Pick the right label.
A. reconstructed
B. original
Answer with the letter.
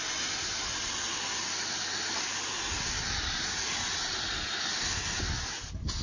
B